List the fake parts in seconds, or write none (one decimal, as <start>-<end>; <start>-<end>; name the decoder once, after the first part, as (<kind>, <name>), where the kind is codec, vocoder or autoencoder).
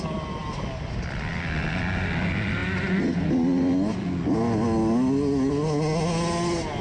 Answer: none